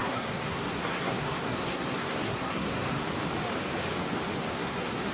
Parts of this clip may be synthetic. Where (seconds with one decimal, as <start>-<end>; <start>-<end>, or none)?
0.0-3.1; 4.4-5.1